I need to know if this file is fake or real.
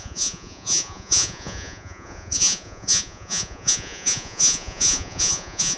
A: fake